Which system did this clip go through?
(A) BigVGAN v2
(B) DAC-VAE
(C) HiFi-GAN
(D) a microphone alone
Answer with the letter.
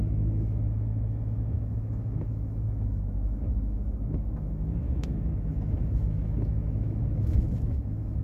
B